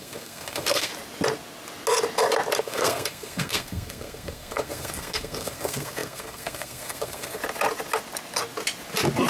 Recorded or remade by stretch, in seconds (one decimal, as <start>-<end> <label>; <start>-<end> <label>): 0.0-0.9 remade; 0.9-2.6 recorded; 2.6-7.4 remade; 7.4-9.3 recorded